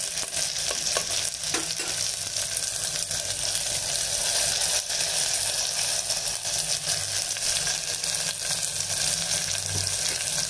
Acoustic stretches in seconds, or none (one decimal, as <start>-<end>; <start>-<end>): 0.0-10.5